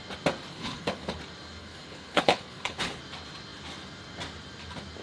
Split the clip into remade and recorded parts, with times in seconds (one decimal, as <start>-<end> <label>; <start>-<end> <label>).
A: 0.0-0.5 recorded; 0.5-1.2 remade; 1.2-1.6 recorded; 1.6-3.0 remade; 3.0-5.0 recorded